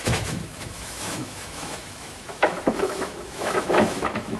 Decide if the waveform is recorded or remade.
remade